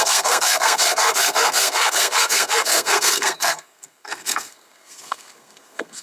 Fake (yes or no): yes